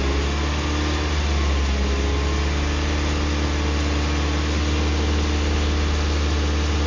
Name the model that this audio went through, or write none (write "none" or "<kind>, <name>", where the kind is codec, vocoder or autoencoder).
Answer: none